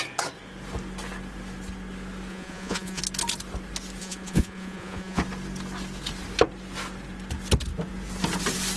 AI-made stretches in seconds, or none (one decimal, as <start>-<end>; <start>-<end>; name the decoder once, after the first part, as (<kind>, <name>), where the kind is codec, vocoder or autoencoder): 2.3-3.0 (vocoder, Vocos); 4.0-5.2